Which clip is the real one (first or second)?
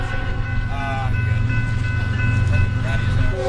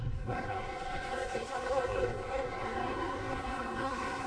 first